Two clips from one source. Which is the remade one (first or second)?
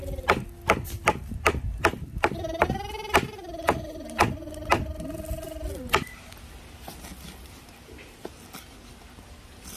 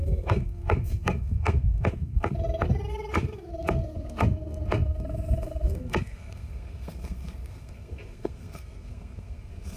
second